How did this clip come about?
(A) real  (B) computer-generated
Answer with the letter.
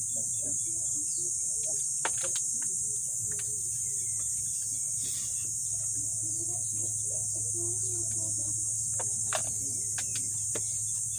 A